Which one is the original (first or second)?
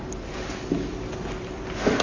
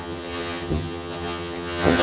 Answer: first